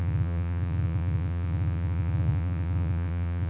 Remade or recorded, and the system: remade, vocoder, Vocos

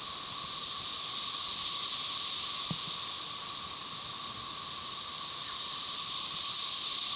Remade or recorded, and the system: recorded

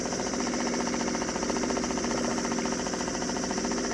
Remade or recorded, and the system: recorded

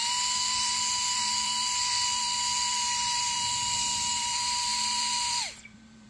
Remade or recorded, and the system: remade, vocoder, BigVGAN v2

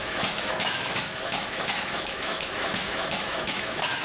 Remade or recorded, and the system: remade, autoencoder, DAC-VAE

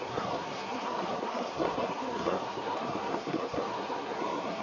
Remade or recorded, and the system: remade, codec, SNAC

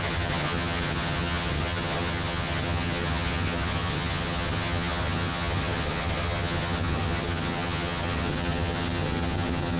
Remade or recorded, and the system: remade, vocoder, HiFi-GAN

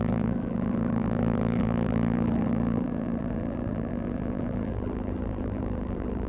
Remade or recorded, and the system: remade, vocoder, BigVGAN v2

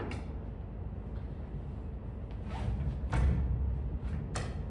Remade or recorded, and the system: recorded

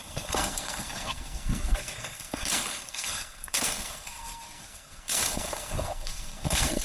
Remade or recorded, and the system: remade, codec, SNAC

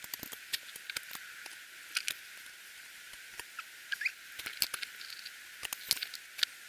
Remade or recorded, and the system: recorded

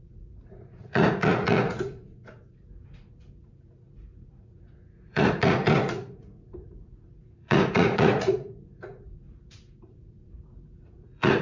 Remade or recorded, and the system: remade, vocoder, Vocos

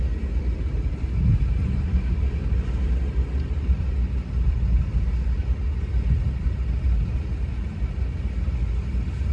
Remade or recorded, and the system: recorded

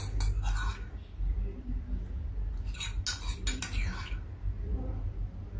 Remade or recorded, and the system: recorded